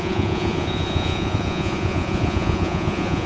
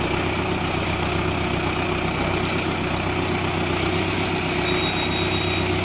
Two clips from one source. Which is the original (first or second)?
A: second